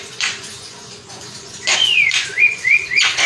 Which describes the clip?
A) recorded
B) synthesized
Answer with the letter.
B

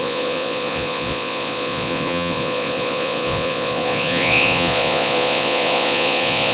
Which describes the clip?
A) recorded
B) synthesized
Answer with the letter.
B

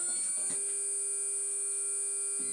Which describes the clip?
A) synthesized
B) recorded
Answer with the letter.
B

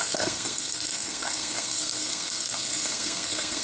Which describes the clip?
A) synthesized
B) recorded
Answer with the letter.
A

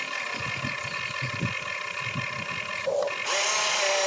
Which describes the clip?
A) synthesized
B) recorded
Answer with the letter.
B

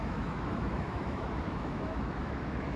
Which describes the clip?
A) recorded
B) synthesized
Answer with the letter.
B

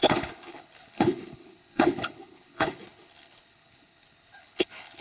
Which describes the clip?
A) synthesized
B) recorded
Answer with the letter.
A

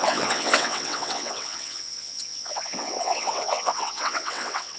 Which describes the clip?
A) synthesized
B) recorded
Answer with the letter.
A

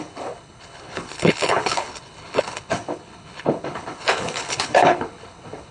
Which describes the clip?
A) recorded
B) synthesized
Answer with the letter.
B